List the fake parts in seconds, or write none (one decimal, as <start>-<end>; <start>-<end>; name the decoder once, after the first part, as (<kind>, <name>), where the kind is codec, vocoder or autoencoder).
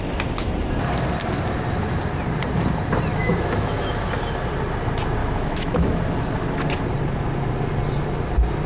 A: 3.1-4.1 (autoencoder, DAC-VAE); 5.2-6.0